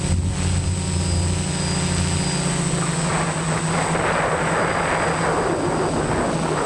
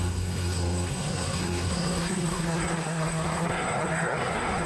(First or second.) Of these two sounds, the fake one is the second